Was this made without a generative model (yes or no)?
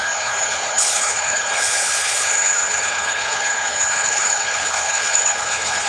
no